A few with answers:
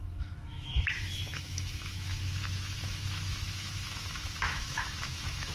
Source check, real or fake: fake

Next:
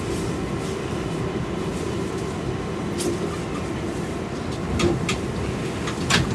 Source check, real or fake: real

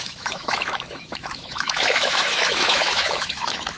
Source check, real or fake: fake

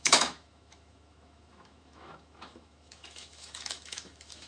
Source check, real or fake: fake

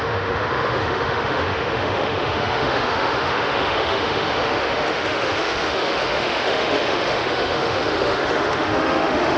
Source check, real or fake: fake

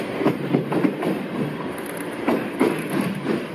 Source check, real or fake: real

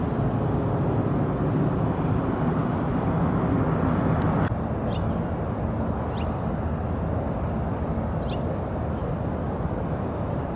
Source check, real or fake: real